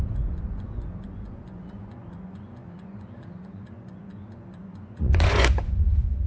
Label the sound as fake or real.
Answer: fake